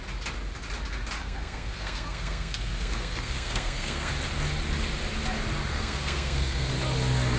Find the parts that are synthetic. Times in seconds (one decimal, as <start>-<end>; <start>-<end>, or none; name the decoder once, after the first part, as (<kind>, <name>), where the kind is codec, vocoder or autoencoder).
1.2-4.1 (codec, SNAC); 5.7-6.7